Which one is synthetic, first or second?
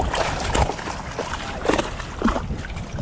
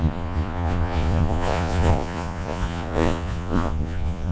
second